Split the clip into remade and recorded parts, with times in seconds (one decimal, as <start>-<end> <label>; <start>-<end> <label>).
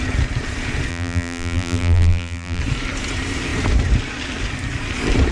0.0-0.9 recorded; 0.9-2.6 remade; 2.6-5.3 recorded